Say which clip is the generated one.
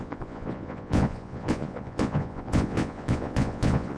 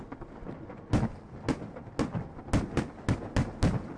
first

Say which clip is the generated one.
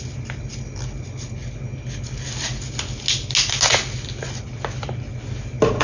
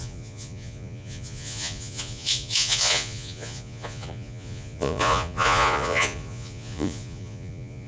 second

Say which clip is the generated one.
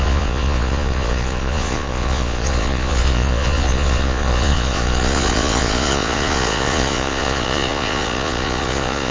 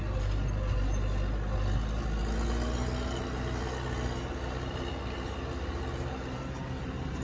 first